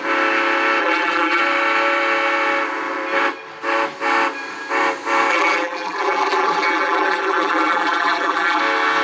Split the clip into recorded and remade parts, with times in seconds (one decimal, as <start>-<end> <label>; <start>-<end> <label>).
0.0-0.8 recorded; 0.8-1.4 remade; 1.4-5.3 recorded; 5.3-8.6 remade; 8.6-9.0 recorded